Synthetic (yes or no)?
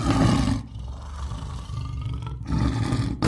no